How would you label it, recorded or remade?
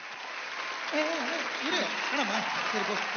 recorded